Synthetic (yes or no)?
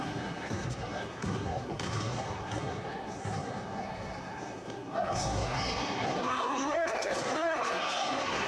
yes